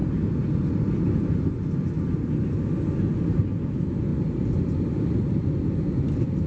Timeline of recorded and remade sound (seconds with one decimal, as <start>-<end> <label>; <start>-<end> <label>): 0.0-4.1 recorded; 4.1-5.3 remade; 5.3-6.5 recorded